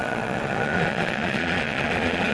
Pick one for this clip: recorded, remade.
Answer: remade